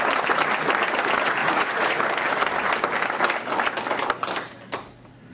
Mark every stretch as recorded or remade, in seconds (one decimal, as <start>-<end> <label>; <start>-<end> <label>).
0.0-1.4 recorded; 1.4-2.0 remade; 2.0-5.3 recorded

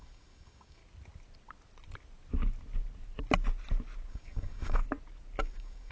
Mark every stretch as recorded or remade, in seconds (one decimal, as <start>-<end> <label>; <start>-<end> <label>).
0.0-0.8 remade; 0.8-4.1 recorded; 4.1-4.8 remade; 4.8-5.4 recorded; 5.4-5.9 remade

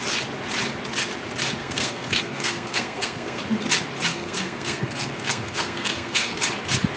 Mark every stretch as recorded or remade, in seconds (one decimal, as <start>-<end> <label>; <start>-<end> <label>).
0.0-1.6 recorded; 1.6-3.4 remade; 3.4-4.1 recorded; 4.1-6.4 remade; 6.4-7.0 recorded

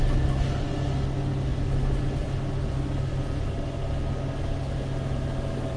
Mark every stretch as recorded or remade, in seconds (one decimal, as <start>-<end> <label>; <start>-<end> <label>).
0.0-5.8 recorded

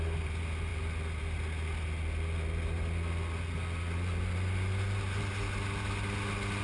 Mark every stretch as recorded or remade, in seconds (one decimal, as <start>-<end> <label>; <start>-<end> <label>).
0.0-6.6 recorded